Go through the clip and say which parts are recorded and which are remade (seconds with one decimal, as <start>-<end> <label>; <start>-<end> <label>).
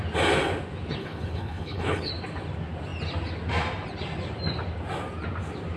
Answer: 0.0-1.0 recorded; 1.0-2.1 remade; 2.1-5.8 recorded